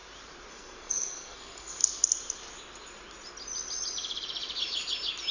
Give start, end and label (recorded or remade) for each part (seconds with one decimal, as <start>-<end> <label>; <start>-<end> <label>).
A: 0.0-0.5 recorded; 0.5-1.8 remade; 1.8-5.3 recorded

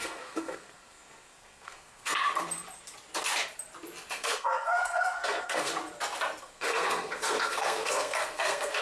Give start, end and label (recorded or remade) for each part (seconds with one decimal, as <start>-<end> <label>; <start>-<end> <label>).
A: 0.0-2.3 remade; 2.3-4.1 recorded; 4.1-5.7 remade; 5.7-6.4 recorded; 6.4-8.8 remade

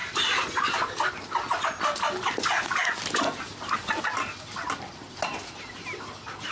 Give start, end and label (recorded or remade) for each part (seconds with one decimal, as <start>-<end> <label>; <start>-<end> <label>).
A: 0.0-6.5 recorded

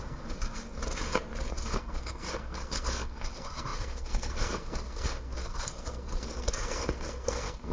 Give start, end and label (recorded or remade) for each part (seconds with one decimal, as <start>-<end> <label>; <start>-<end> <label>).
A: 0.0-0.8 remade; 0.8-1.5 recorded; 1.5-7.7 remade

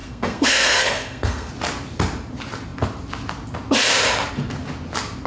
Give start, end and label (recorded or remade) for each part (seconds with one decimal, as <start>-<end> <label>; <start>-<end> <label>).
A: 0.0-1.5 remade; 1.5-5.3 recorded

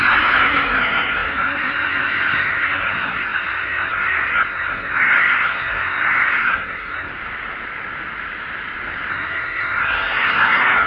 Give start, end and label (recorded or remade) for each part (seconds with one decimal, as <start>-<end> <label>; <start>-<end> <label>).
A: 0.0-7.1 remade; 7.1-9.1 recorded; 9.1-10.9 remade